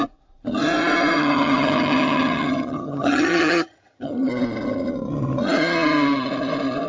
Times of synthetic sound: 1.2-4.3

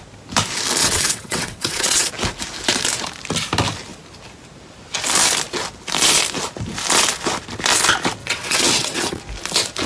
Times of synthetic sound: 0.8-2.1; 8.2-9.2

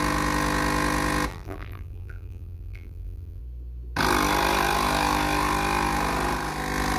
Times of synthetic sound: 1.3-3.4

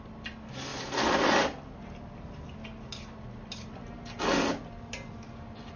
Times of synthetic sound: 0.7-4.2

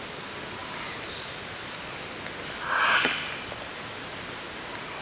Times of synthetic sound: none